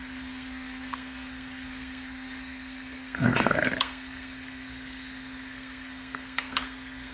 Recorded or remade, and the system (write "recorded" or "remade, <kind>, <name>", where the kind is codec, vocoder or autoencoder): remade, codec, SNAC